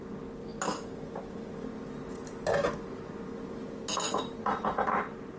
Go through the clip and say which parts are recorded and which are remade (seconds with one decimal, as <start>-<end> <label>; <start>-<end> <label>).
0.0-5.4 recorded